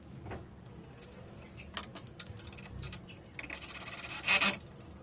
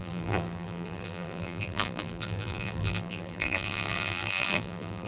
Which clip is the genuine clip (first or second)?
first